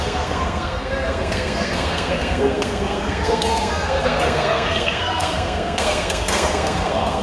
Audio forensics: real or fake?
fake